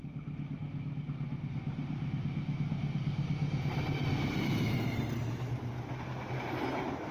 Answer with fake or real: real